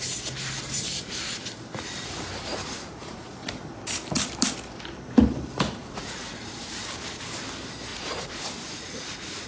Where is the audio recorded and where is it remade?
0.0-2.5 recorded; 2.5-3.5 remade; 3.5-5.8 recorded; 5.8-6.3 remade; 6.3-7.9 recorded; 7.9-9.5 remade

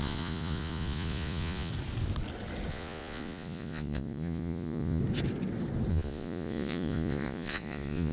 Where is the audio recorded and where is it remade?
0.0-1.7 remade; 1.7-2.7 recorded; 2.7-5.0 remade; 5.0-5.9 recorded; 5.9-8.1 remade

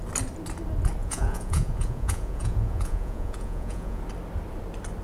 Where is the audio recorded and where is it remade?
0.0-1.0 recorded; 1.0-4.0 remade; 4.0-5.0 recorded